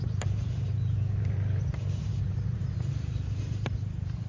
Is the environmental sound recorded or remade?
remade